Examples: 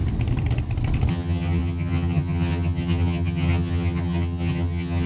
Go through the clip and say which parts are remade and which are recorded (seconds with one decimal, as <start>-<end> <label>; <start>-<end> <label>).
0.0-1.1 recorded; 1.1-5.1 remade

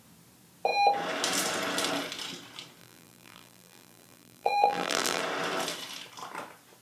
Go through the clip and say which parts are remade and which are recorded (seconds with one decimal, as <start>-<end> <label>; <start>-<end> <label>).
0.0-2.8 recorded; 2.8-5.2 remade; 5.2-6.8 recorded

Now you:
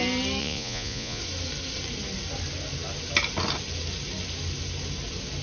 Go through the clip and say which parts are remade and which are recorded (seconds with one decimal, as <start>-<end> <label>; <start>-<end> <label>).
0.0-0.4 recorded; 0.4-1.2 remade; 1.2-5.4 recorded

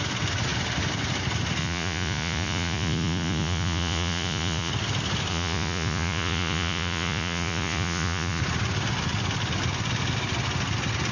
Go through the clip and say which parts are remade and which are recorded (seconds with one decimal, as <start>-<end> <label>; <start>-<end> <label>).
0.0-1.6 recorded; 1.6-4.7 remade; 4.7-5.3 recorded; 5.3-8.4 remade; 8.4-11.1 recorded